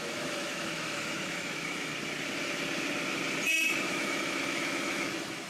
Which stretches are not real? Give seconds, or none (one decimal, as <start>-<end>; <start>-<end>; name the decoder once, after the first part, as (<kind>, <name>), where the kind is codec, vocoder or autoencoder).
0.0-1.9 (autoencoder, DAC-VAE); 3.9-5.5

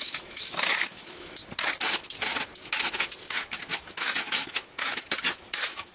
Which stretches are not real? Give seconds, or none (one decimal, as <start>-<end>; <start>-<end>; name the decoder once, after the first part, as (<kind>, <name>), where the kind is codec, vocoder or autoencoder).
0.0-1.4 (autoencoder, DAC-VAE); 1.9-5.9

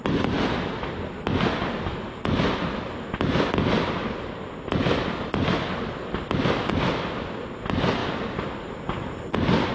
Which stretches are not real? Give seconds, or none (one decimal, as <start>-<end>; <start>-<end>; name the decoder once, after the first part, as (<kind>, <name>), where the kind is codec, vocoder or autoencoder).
none

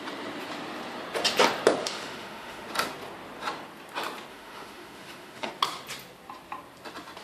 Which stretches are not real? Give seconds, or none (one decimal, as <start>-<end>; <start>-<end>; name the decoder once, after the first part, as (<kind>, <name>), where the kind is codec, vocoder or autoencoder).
1.8-2.7 (autoencoder, DAC-VAE); 4.3-5.5